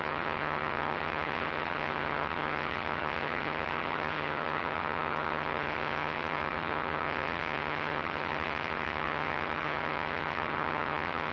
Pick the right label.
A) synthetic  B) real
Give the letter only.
A